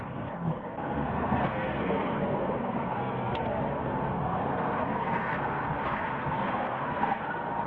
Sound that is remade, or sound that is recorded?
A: remade